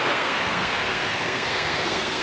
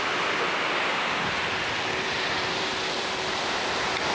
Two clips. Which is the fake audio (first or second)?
first